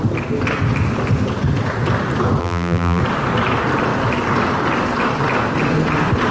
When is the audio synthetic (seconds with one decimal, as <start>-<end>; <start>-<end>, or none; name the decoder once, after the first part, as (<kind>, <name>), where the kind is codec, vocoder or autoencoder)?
2.4-3.0 (vocoder, BigVGAN v2)